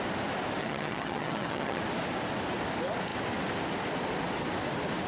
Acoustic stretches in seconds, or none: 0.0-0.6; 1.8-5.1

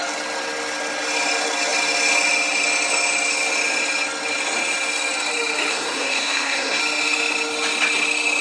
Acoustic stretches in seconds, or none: 0.0-5.7; 6.8-8.4

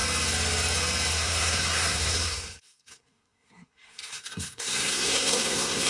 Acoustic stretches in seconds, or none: 0.0-1.1

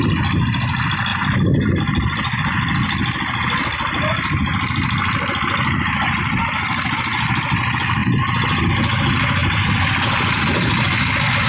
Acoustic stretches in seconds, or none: 0.0-9.4; 10.4-11.5

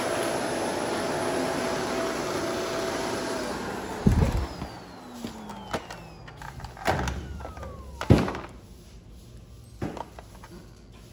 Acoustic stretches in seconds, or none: 0.0-0.7; 1.2-11.1

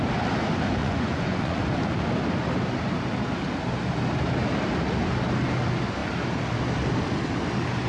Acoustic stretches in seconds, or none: 0.0-0.8; 1.6-7.9